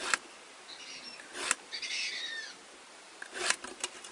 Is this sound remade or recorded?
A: recorded